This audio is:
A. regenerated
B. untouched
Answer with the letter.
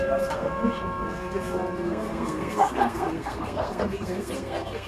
A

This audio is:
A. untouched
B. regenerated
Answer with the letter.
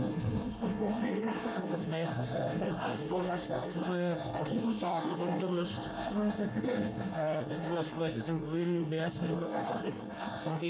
B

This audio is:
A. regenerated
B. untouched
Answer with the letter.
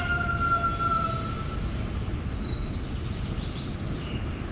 B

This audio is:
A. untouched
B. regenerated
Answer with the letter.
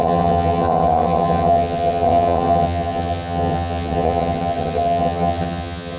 B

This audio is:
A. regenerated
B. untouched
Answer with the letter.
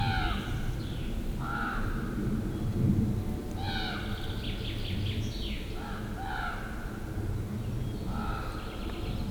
B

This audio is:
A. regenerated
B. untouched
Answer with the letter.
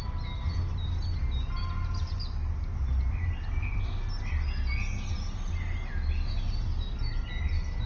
B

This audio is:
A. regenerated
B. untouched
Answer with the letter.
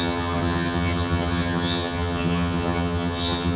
A